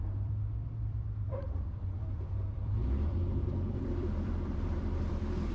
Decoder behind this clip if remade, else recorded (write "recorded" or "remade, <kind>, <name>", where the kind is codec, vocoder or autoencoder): remade, vocoder, BigVGAN v2